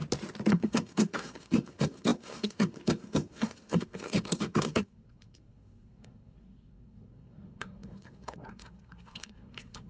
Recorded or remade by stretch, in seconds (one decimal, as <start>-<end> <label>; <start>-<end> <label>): 0.0-0.5 recorded; 0.5-9.9 remade